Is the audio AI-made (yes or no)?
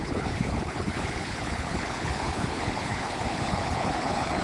yes